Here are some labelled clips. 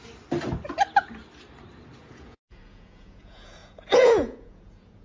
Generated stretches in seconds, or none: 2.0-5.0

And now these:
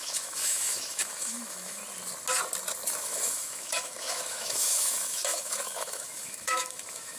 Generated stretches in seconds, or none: 0.0-1.8; 3.0-7.2

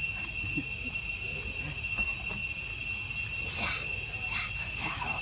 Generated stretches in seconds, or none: 4.6-5.2

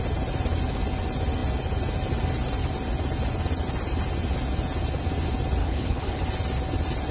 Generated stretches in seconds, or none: 5.6-6.2